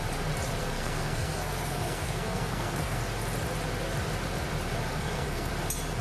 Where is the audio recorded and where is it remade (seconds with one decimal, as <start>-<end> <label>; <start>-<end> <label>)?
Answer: 0.0-0.6 recorded; 0.6-3.0 remade; 3.0-4.9 recorded; 4.9-5.5 remade; 5.5-6.0 recorded

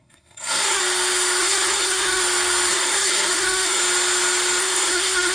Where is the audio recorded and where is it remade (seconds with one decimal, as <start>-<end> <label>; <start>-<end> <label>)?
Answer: 0.0-0.8 remade; 0.8-1.4 recorded; 1.4-2.2 remade; 2.2-2.7 recorded; 2.7-3.8 remade; 3.8-4.6 recorded; 4.6-5.3 remade

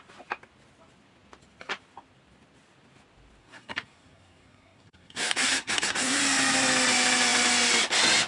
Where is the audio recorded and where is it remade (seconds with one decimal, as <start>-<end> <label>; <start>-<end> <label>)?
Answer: 0.0-3.4 recorded; 3.4-6.2 remade; 6.2-8.3 recorded

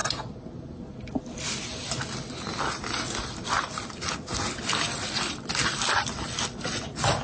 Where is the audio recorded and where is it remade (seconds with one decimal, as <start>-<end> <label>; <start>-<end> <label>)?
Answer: 0.0-7.2 recorded

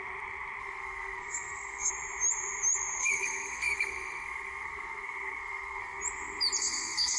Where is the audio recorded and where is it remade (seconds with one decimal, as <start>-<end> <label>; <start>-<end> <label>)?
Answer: 0.0-0.6 recorded; 0.6-1.9 remade; 1.9-3.0 recorded; 3.0-6.0 remade; 6.0-6.6 recorded; 6.6-7.2 remade

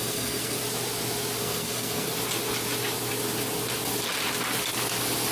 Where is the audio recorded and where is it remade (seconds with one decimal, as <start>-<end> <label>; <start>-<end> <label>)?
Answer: 0.0-0.6 remade; 0.6-1.4 recorded; 1.4-2.1 remade; 2.1-5.3 recorded

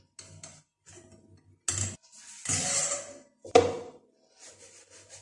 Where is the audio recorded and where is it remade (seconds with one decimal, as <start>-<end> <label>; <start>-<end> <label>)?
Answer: 0.0-5.2 recorded

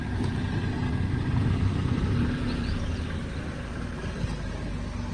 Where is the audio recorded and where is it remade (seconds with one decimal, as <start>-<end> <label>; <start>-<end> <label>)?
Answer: 0.0-5.1 recorded